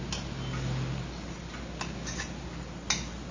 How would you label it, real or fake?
real